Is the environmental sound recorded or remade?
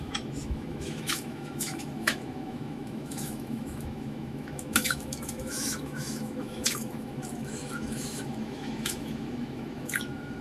remade